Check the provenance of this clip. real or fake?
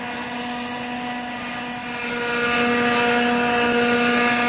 real